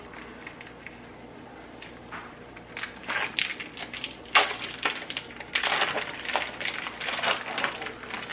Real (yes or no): yes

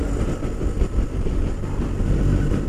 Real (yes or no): yes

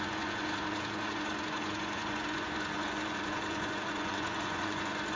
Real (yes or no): no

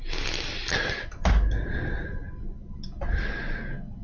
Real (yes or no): yes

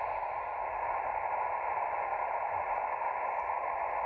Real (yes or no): yes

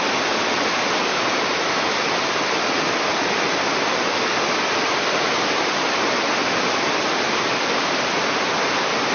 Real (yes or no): yes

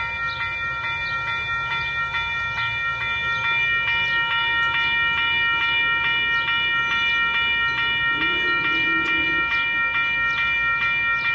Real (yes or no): yes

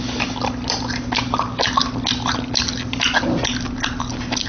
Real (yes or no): yes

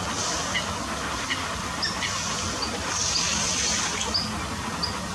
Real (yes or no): yes